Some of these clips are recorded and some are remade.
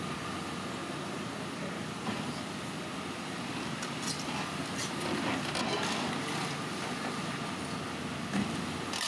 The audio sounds remade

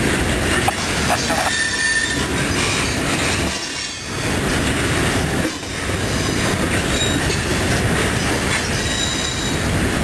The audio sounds recorded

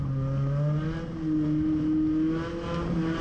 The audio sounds recorded